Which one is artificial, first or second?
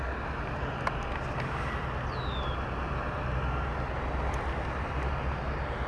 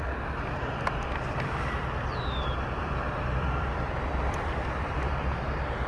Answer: second